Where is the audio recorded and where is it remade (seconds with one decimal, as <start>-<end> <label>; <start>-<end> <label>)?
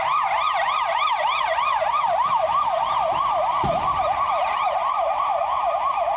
0.0-1.5 recorded; 1.5-5.2 remade; 5.2-6.2 recorded